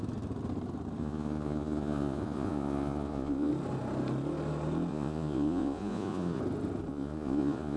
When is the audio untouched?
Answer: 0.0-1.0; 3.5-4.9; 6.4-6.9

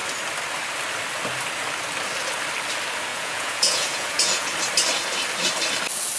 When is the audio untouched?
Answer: 0.0-3.1; 4.5-6.2

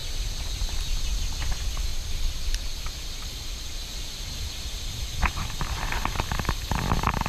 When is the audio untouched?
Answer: 0.5-1.9; 3.9-7.3

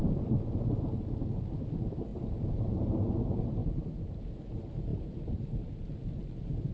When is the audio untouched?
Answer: 0.0-2.1; 2.9-3.6; 4.2-4.9; 5.9-6.7

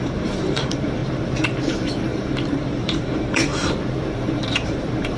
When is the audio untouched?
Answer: 1.0-1.7; 3.5-4.1

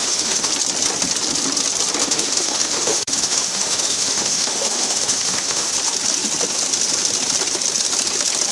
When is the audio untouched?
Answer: 0.5-2.0; 5.7-8.5

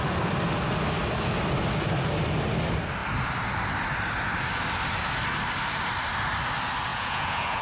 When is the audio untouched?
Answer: 0.0-6.9

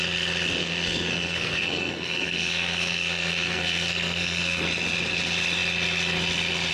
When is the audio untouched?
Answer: 0.0-0.6; 4.6-6.7